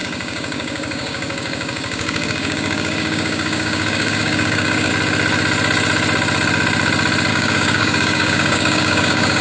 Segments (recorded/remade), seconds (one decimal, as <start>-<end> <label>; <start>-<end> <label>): 0.0-4.9 remade; 4.9-7.3 recorded; 7.3-9.4 remade